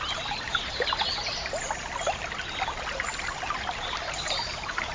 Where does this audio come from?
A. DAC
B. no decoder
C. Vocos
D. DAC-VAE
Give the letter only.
B